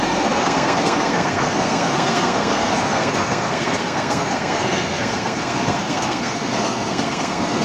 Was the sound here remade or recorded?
remade